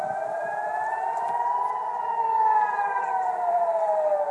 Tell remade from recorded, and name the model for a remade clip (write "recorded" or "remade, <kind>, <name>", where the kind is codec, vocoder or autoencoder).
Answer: remade, vocoder, BigVGAN v2